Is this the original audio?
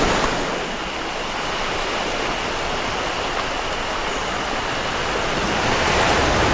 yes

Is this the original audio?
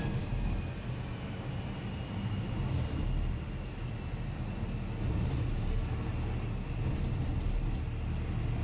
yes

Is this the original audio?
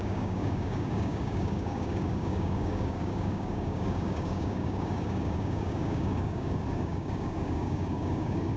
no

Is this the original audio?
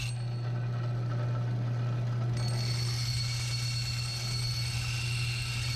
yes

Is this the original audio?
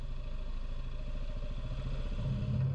yes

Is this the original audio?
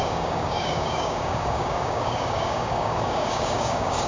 no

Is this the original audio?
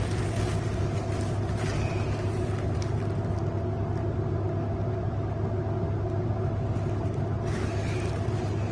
yes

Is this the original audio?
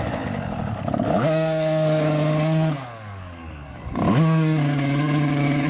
no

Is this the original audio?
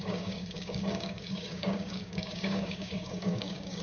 no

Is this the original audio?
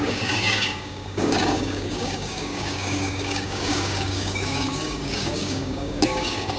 no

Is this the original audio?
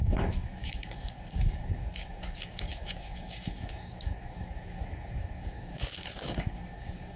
no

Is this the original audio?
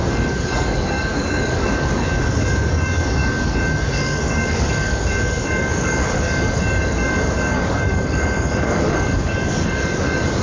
no